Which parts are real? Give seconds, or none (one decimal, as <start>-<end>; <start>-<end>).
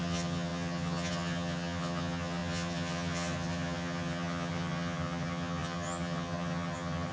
none